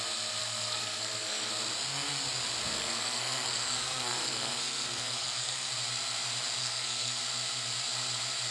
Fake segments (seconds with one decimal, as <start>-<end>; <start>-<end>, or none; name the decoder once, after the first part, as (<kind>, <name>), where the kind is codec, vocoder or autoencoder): 0.4-1.5 (codec, SNAC); 2.7-5.7; 6.6-7.2